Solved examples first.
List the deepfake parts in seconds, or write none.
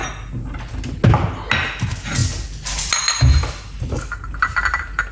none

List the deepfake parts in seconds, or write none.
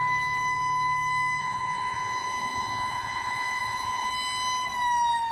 1.4-4.1 (vocoder, Vocos)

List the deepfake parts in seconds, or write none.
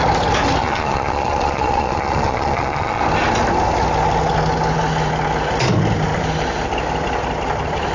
0.6-3.0 (vocoder, Vocos)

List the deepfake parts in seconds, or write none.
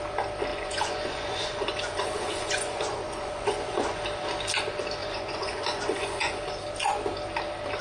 0.5-4.0 (vocoder, Vocos); 5.0-6.4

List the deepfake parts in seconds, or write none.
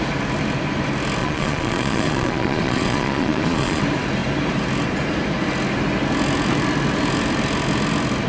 1.2-3.8 (vocoder, Vocos)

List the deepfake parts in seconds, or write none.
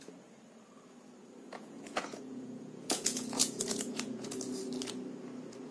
1.5-4.3 (vocoder, Vocos)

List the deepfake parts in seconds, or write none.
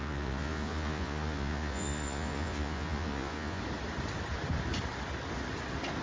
0.0-3.6 (vocoder, Vocos)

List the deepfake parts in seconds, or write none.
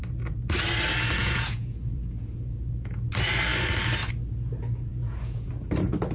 1.2-3.1 (vocoder, Vocos); 4.9-5.5